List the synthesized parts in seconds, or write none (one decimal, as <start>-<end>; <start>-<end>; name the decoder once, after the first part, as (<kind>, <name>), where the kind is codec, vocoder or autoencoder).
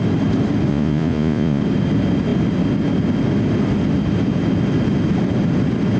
0.7-1.6 (vocoder, Vocos)